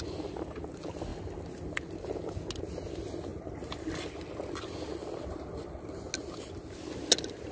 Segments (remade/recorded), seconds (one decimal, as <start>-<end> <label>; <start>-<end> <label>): 0.0-7.5 recorded

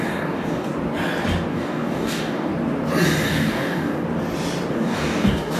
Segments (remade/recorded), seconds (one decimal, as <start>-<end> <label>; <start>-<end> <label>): 0.0-0.7 remade; 0.7-1.5 recorded; 1.5-2.5 remade; 2.5-3.3 recorded; 3.3-3.9 remade; 3.9-4.7 recorded; 4.7-5.6 remade